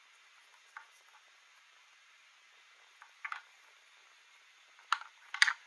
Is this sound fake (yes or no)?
no